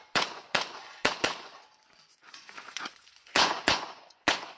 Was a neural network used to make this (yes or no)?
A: yes